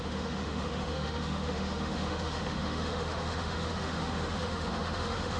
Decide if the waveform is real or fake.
fake